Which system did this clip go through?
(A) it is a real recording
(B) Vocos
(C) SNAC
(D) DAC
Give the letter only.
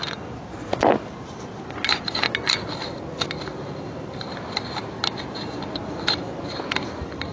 A